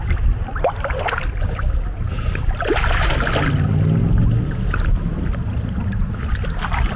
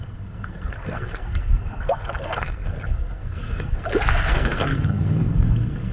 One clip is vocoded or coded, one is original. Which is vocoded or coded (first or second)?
second